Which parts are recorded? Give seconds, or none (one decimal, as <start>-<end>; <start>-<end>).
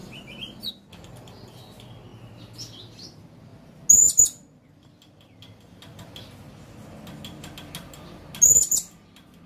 0.7-9.5